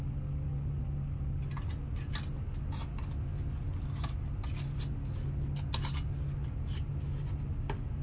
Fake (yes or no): no